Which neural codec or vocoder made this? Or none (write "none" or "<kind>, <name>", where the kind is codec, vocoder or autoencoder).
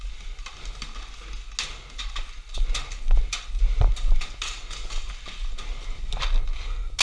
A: none